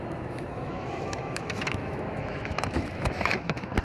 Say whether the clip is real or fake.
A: fake